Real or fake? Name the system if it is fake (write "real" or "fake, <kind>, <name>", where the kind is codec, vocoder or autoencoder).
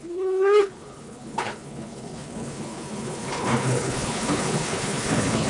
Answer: fake, codec, HILCodec